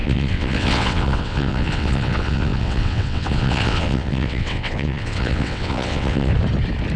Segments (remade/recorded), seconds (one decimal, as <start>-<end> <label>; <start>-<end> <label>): 0.0-6.3 remade; 6.3-7.0 recorded